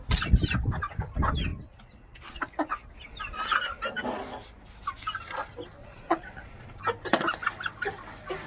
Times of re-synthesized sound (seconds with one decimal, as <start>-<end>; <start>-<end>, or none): 5.8-6.8